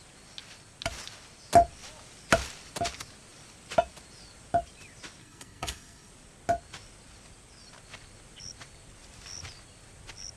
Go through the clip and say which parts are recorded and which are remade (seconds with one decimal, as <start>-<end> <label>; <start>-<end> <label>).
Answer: 0.0-5.2 recorded; 5.2-6.1 remade; 6.1-10.4 recorded

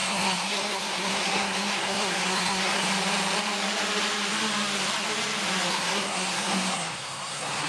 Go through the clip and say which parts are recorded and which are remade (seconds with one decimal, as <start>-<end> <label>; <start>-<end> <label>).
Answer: 0.0-2.9 remade; 2.9-5.7 recorded; 5.7-7.7 remade